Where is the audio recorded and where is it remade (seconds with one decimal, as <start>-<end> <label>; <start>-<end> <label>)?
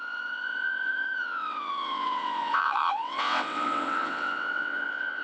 0.0-5.2 remade